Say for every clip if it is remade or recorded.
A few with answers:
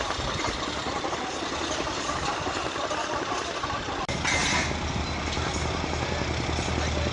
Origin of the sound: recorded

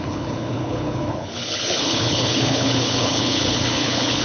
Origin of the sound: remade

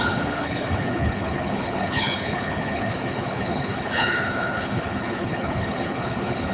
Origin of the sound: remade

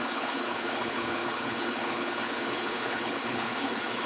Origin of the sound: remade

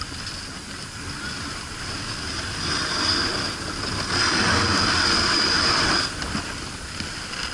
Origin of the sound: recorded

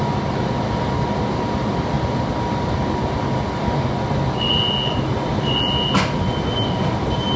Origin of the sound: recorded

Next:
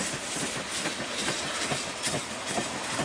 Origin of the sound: recorded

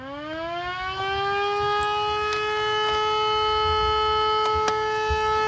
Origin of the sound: recorded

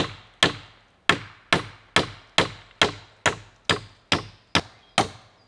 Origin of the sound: recorded